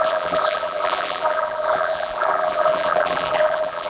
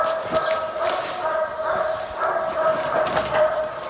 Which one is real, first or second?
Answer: second